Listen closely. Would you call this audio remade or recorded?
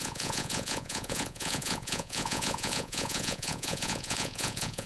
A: remade